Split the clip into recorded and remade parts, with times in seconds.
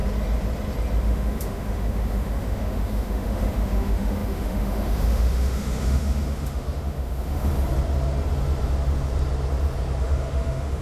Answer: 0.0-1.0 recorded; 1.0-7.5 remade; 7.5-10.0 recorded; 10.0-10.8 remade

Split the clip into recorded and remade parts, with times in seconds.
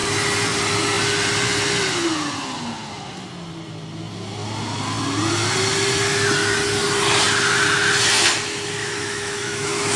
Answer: 0.0-8.8 recorded; 8.8-10.0 remade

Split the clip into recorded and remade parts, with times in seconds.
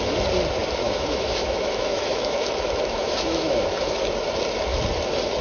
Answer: 0.0-0.8 recorded; 0.8-4.0 remade; 4.0-5.4 recorded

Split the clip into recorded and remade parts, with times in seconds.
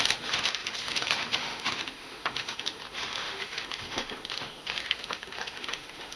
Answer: 0.0-6.2 remade